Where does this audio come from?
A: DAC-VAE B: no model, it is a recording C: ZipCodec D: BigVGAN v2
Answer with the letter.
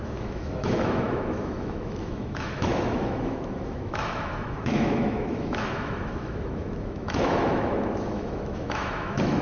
A